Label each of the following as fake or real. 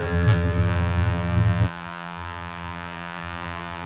fake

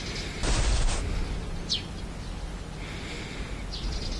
real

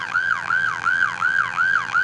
fake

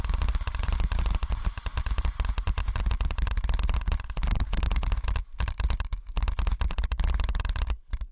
fake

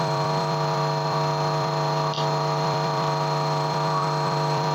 fake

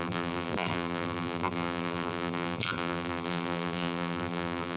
fake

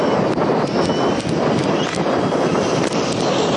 real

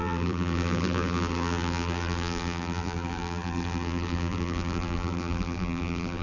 fake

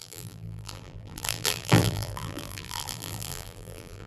fake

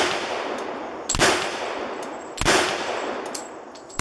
real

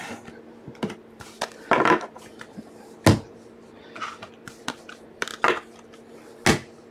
real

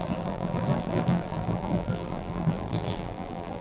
fake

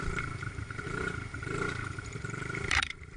fake